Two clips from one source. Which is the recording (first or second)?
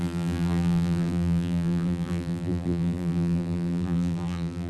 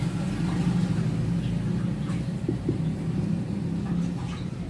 second